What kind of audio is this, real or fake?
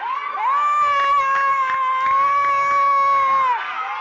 real